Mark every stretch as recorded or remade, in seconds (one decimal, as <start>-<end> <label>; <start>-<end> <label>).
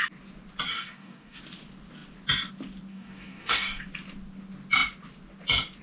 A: 0.0-0.7 recorded; 0.7-1.4 remade; 1.4-2.9 recorded; 2.9-3.8 remade; 3.8-5.8 recorded